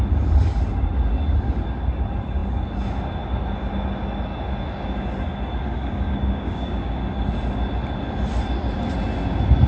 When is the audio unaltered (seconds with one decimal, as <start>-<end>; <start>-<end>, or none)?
0.0-5.7; 7.0-9.7